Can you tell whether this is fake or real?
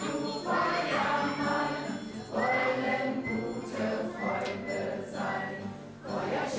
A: real